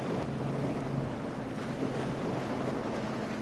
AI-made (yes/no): no